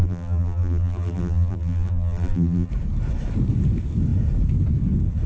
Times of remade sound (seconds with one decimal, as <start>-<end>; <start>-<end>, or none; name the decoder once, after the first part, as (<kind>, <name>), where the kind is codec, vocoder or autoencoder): 0.0-2.7 (vocoder, BigVGAN v2)